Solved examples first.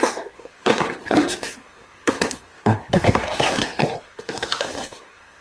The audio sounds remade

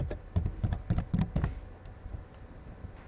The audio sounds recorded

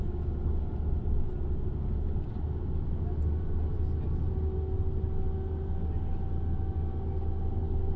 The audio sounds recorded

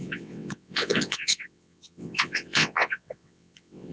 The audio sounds remade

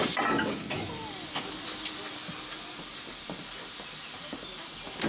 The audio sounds remade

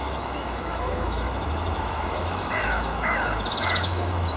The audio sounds remade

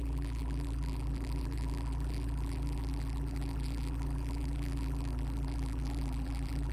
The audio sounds remade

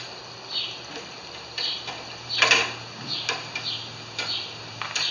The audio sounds recorded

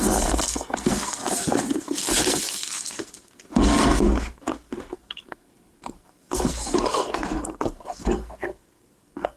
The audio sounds remade